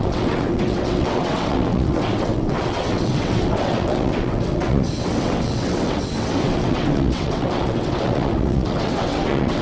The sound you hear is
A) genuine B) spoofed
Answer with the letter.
B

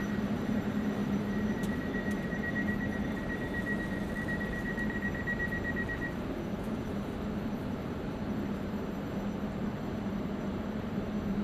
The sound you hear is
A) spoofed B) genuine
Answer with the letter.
A